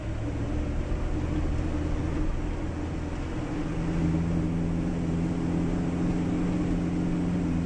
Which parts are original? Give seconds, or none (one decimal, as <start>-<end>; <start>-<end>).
0.0-7.7